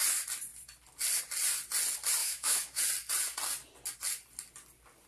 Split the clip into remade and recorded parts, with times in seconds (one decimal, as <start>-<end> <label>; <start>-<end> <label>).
0.0-2.2 recorded; 2.2-2.8 remade; 2.8-5.1 recorded